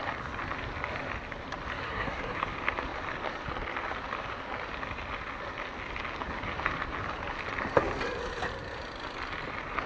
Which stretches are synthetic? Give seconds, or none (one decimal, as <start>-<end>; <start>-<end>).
1.8-2.4